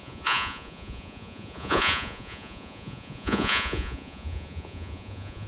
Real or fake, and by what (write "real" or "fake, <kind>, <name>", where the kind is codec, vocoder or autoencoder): fake, vocoder, Vocos